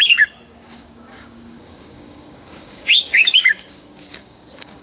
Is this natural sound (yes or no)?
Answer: no